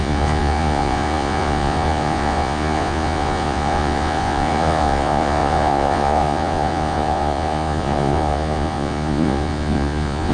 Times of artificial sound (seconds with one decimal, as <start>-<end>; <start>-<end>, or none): 0.0-10.3